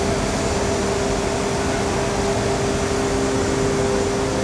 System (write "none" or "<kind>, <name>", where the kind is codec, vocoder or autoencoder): none